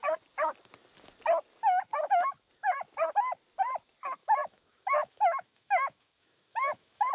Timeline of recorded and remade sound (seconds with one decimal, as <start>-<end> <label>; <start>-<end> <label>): 0.0-1.9 recorded; 1.9-2.5 remade; 2.5-4.2 recorded; 4.2-7.1 remade